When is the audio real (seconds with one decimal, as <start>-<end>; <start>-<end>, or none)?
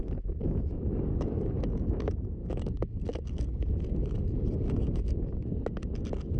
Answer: 0.0-0.7; 1.6-2.4; 5.4-6.4